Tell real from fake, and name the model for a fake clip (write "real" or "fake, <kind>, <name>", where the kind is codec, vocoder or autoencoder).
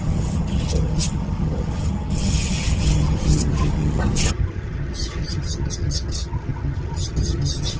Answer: fake, vocoder, HiFi-GAN